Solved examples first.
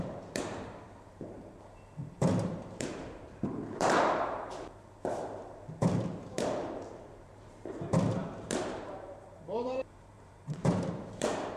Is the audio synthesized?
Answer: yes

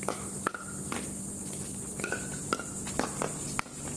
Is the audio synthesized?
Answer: no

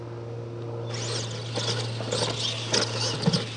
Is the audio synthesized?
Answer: no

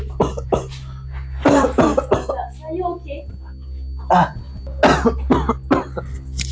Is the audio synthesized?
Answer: no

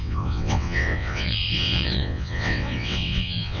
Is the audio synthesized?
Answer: yes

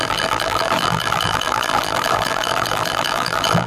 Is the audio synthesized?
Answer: yes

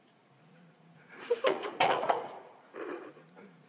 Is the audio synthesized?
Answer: yes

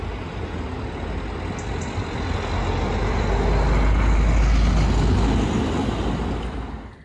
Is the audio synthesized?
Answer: no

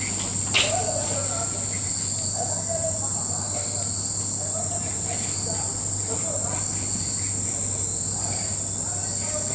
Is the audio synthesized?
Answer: no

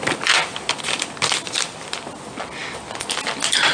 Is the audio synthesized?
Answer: no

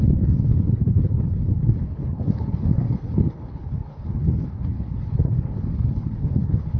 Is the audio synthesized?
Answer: yes